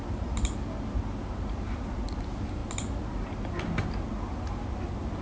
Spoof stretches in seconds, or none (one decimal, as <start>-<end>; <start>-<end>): none